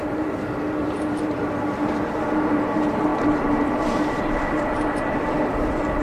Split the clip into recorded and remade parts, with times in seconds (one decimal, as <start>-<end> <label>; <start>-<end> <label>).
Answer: 0.0-6.0 remade